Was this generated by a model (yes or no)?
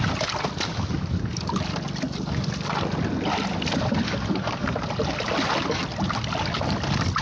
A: no